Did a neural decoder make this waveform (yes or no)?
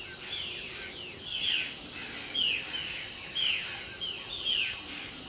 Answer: no